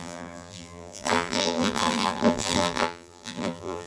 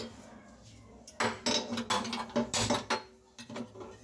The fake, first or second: first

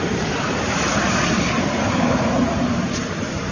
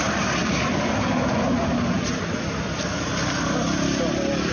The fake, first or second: first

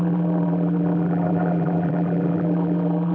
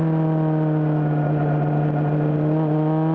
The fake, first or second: first